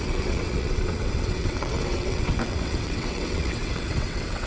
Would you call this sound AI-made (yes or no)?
yes